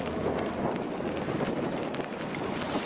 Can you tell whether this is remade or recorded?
recorded